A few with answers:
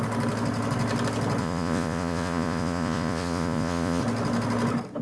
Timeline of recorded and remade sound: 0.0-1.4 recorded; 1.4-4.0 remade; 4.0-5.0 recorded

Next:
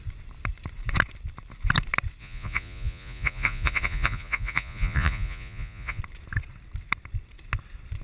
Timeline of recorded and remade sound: 0.0-2.2 recorded; 2.2-6.0 remade; 6.0-8.0 recorded

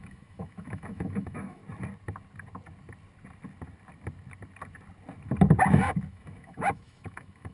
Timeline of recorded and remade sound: 0.0-1.6 remade; 1.6-6.1 recorded; 6.1-7.5 remade